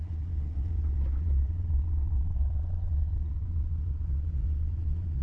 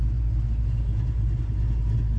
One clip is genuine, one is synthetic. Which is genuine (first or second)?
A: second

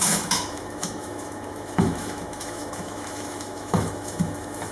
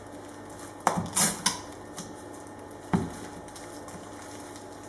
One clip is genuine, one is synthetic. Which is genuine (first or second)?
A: second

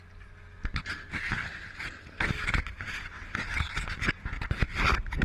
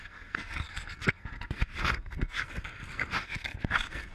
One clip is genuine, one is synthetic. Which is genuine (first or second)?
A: first